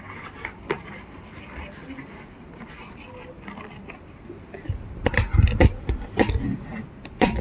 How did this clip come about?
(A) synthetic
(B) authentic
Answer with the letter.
A